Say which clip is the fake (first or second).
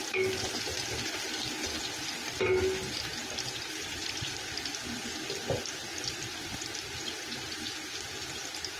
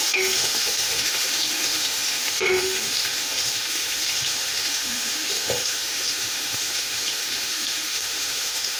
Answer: second